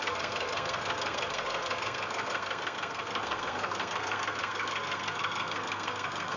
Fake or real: fake